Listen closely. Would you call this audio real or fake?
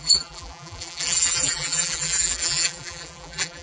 fake